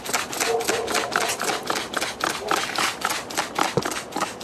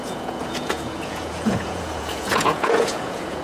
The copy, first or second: second